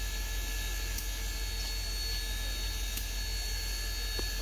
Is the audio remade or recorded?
recorded